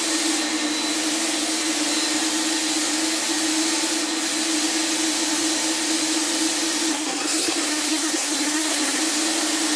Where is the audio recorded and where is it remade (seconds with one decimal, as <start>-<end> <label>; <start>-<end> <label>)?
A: 0.0-6.9 recorded; 6.9-9.0 remade; 9.0-9.8 recorded